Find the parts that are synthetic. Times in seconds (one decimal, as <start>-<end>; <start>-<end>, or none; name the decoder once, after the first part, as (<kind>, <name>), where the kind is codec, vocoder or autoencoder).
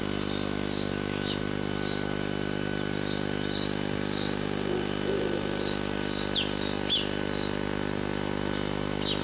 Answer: 0.9-1.4 (autoencoder, DAC-VAE)